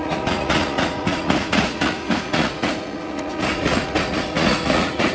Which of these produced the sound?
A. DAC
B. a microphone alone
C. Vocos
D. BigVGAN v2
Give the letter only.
C